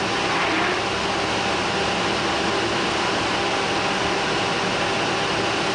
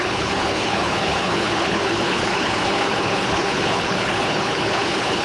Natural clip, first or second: first